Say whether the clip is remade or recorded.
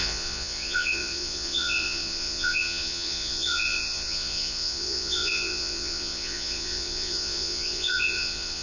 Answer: remade